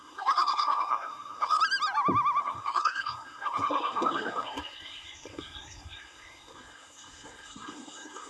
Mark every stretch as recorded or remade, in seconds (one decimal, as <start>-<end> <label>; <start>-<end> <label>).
0.0-1.6 remade; 1.6-2.4 recorded; 2.4-8.3 remade